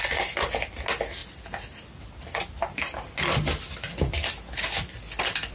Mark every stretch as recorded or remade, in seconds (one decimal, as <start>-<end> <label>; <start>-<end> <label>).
0.0-5.5 recorded